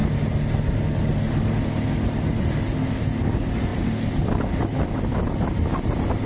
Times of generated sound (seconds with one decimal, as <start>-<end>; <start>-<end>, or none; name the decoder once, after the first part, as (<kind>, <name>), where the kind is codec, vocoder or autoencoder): none